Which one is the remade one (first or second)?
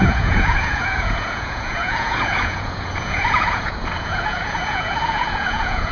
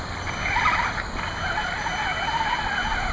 first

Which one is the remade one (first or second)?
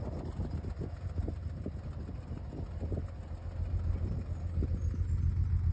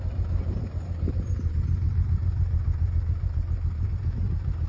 second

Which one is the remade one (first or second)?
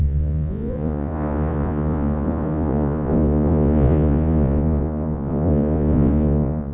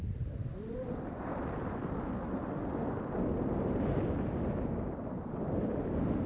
first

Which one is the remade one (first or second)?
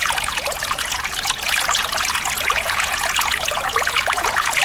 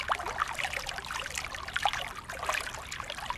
first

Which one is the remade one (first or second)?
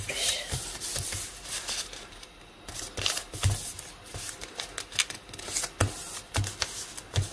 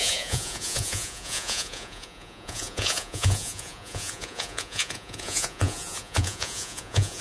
second